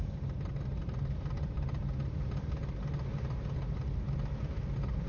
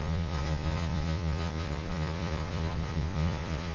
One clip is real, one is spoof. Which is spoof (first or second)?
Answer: second